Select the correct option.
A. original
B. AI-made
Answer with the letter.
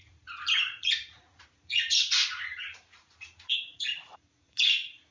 B